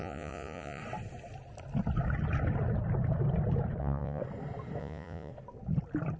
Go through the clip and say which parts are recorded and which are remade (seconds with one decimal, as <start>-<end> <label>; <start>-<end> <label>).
0.0-0.8 remade; 0.8-3.8 recorded; 3.8-4.2 remade; 4.2-4.8 recorded; 4.8-5.3 remade; 5.3-6.2 recorded